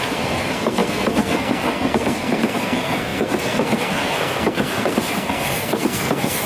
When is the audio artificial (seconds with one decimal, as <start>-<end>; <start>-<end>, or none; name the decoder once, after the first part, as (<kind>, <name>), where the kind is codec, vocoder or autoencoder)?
0.0-6.5 (codec, SNAC)